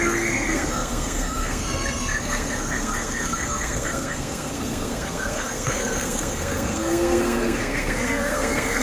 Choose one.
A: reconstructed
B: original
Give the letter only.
A